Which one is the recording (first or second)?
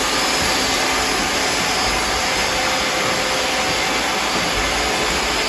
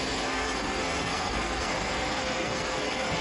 first